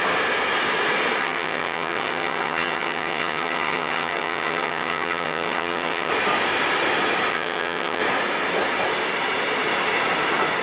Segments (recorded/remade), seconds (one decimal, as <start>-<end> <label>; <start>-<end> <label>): 0.0-1.2 recorded; 1.2-6.1 remade; 6.1-7.3 recorded; 7.3-8.0 remade; 8.0-10.6 recorded